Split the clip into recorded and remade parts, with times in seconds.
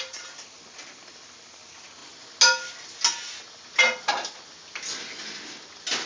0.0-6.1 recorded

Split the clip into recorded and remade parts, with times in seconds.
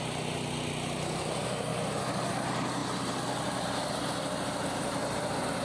0.0-5.6 recorded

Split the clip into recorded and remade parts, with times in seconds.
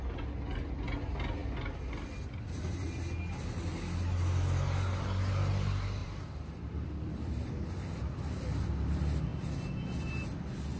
0.0-6.0 recorded; 6.0-7.7 remade; 7.7-10.8 recorded